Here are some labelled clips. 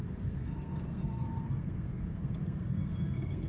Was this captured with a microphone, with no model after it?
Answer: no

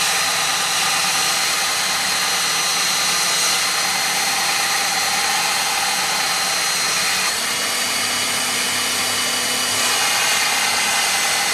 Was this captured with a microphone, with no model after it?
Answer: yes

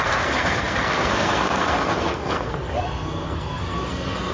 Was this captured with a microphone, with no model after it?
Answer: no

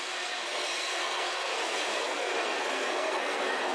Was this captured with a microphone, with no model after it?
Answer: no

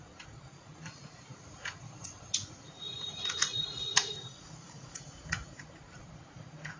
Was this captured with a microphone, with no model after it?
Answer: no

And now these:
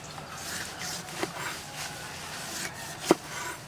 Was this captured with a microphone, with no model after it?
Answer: yes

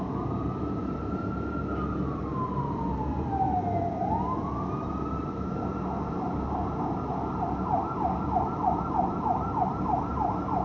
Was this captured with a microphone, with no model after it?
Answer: yes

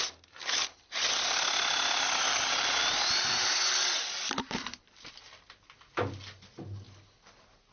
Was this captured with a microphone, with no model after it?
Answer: yes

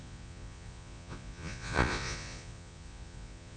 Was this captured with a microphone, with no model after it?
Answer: no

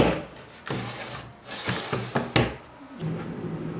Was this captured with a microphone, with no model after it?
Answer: yes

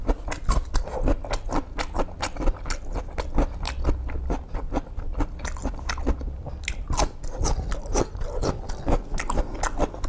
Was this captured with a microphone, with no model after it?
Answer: yes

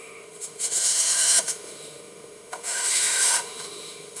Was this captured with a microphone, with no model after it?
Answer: no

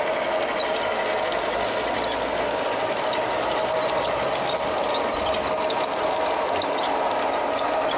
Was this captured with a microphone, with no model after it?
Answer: yes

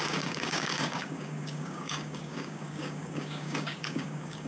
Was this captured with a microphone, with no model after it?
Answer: no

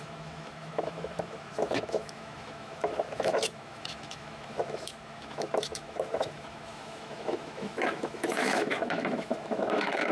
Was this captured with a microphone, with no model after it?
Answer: no